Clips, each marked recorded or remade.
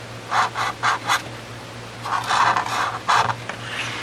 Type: recorded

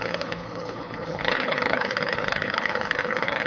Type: remade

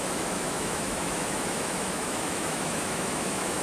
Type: remade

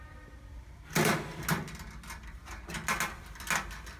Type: recorded